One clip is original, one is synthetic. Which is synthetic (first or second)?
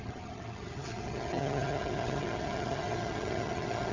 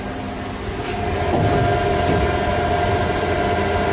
first